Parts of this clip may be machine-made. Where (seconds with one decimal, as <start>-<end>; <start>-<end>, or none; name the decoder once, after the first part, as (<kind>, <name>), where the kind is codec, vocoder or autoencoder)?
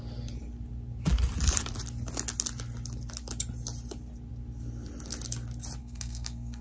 5.8-6.6 (codec, SNAC)